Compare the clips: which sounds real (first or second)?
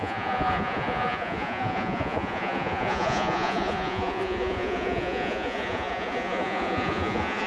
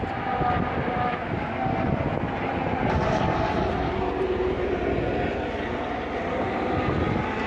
second